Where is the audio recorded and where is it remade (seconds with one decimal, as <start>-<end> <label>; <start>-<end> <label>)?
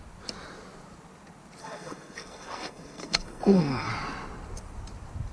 0.0-1.6 recorded; 1.6-3.9 remade; 3.9-5.3 recorded